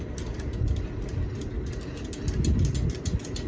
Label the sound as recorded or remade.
recorded